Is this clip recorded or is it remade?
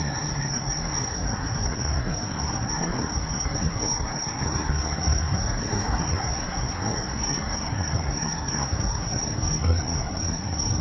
remade